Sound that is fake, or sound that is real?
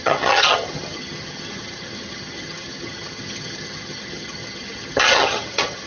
fake